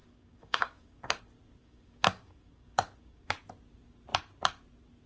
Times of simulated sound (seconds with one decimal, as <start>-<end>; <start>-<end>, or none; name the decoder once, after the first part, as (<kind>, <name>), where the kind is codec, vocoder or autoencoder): 0.0-1.2 (codec, DAC); 1.6-3.4